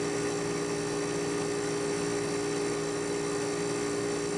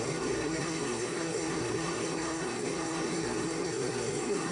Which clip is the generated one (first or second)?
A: second